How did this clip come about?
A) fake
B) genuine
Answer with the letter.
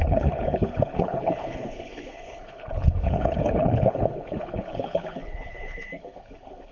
A